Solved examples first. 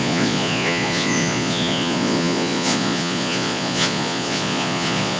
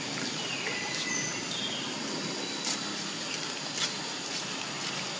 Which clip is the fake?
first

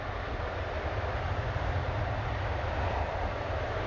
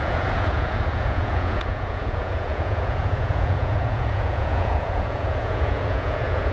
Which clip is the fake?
second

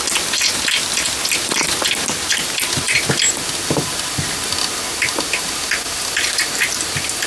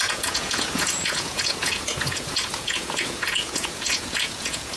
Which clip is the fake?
second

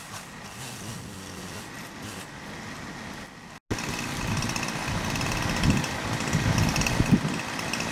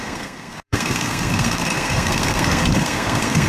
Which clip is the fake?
second